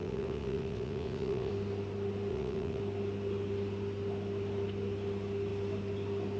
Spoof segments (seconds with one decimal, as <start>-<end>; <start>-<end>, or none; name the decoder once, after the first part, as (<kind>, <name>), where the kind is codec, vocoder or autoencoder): 0.0-1.5 (vocoder, WaveNeXt); 2.3-2.8